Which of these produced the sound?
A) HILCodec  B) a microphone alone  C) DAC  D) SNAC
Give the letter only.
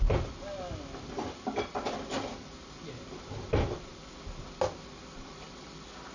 B